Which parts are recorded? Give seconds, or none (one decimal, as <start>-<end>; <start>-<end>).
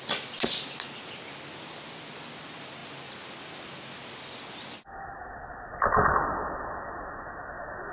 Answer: 0.0-7.9